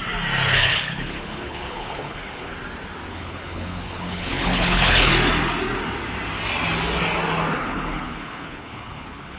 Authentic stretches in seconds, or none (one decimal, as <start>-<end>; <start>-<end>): 0.0-0.5; 2.5-3.1; 5.1-7.6